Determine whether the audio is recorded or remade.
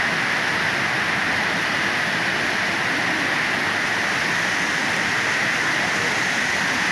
recorded